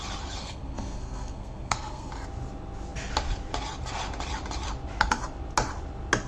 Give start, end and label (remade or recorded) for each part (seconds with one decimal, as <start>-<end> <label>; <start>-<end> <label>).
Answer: 0.0-0.4 recorded; 0.4-2.1 remade; 2.1-6.3 recorded